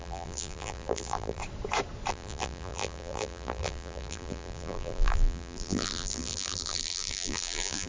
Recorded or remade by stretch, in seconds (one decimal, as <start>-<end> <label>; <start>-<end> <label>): 0.0-1.4 remade; 1.4-2.1 recorded; 2.1-7.9 remade